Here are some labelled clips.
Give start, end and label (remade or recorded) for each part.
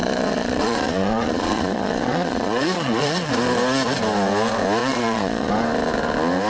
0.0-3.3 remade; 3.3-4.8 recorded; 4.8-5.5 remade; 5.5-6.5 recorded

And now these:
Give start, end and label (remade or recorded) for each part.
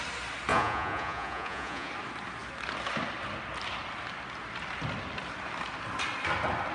0.0-0.5 recorded; 0.5-1.9 remade; 1.9-6.7 recorded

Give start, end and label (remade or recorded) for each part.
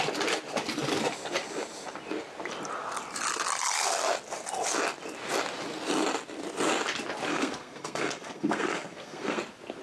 0.0-7.3 recorded; 7.3-9.4 remade; 9.4-9.8 recorded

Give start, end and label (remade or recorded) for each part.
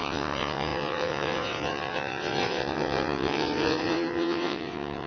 0.0-5.1 remade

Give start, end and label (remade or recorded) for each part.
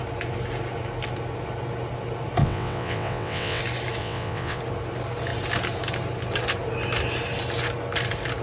0.0-2.4 recorded; 2.4-3.6 remade; 3.6-4.0 recorded; 4.0-4.6 remade; 4.6-8.4 recorded